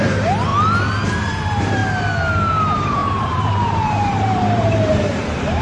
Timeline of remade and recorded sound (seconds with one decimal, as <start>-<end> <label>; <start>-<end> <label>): 0.0-0.5 remade; 0.5-1.2 recorded; 1.2-1.8 remade; 1.8-2.6 recorded; 2.6-5.6 remade